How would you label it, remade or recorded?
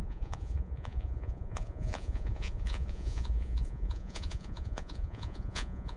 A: remade